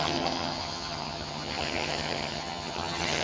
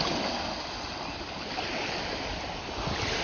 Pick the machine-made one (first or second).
first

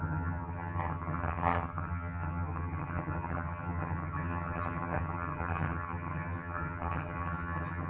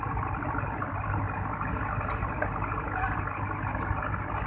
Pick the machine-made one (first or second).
first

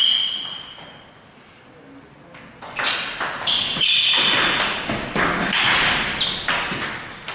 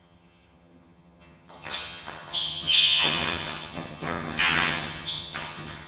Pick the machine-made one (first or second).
second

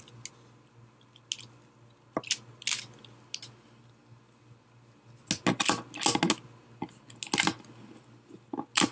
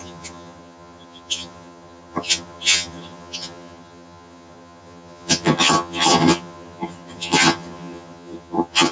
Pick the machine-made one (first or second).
second